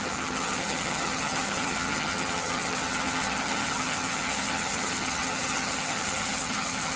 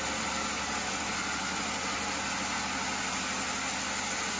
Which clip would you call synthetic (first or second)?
first